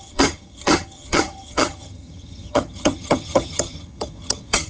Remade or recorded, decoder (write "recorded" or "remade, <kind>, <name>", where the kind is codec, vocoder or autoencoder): remade, vocoder, HiFi-GAN